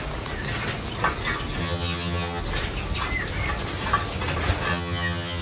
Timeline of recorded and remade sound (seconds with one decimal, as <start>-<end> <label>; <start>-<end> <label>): 0.0-1.6 recorded; 1.6-2.4 remade; 2.4-4.7 recorded; 4.7-5.4 remade